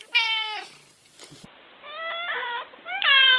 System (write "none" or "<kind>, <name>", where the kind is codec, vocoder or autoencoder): vocoder, BigVGAN v2